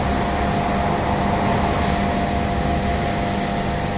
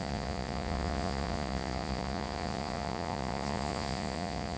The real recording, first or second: first